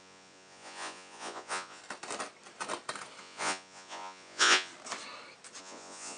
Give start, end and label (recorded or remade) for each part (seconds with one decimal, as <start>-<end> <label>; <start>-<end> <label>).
0.0-1.8 remade; 1.8-3.2 recorded; 3.2-4.7 remade; 4.7-5.6 recorded; 5.6-6.2 remade